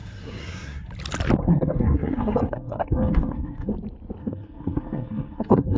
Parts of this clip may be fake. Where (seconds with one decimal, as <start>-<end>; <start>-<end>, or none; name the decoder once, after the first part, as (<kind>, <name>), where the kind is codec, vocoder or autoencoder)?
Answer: 0.0-0.9 (codec, SNAC); 1.4-3.7; 4.2-5.8